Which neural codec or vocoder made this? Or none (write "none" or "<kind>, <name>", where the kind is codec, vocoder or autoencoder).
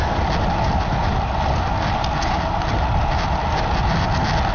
none